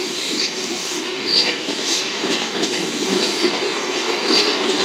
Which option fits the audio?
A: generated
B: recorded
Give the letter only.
A